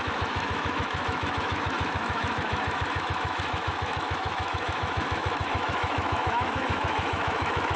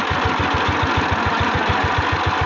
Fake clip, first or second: first